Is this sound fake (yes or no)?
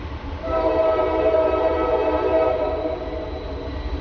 yes